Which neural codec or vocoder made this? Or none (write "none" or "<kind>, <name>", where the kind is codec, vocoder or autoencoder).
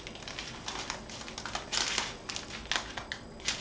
none